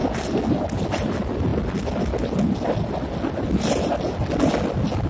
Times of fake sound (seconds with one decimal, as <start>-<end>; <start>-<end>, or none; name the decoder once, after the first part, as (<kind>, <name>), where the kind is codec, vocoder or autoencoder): none